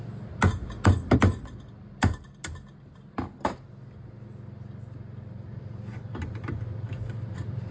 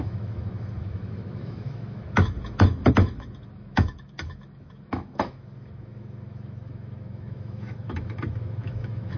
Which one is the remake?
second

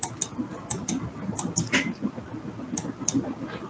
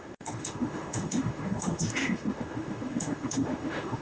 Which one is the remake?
second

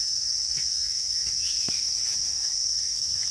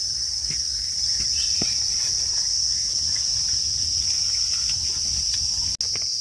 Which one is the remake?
first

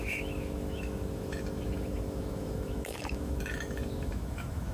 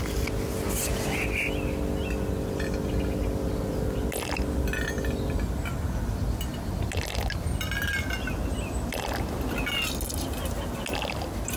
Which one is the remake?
first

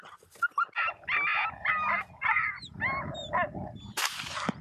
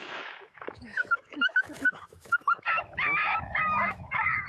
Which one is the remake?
second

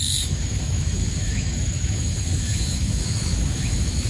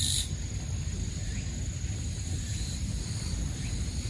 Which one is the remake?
first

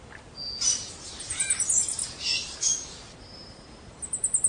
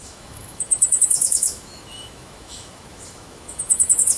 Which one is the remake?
second